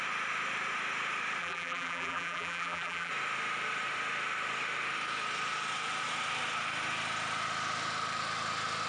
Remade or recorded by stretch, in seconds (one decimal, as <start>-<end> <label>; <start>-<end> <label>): 0.0-1.4 recorded; 1.4-3.1 remade; 3.1-8.9 recorded